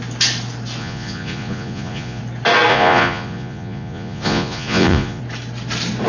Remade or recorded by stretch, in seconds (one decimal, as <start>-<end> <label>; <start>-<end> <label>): 0.0-0.8 recorded; 0.8-2.2 remade; 2.2-2.7 recorded; 2.7-5.2 remade; 5.2-6.1 recorded